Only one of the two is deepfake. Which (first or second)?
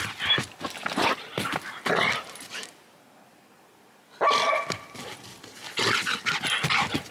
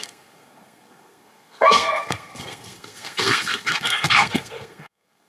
second